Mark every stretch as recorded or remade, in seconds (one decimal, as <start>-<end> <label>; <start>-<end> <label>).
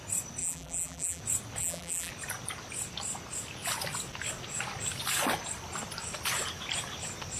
0.0-0.4 recorded; 0.4-1.2 remade; 1.2-1.6 recorded; 1.6-2.1 remade; 2.1-7.4 recorded